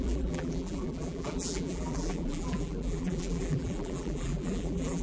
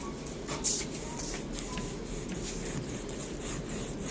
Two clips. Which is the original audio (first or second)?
second